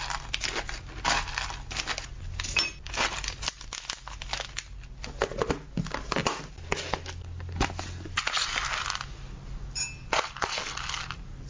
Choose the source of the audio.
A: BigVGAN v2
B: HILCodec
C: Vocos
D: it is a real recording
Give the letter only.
D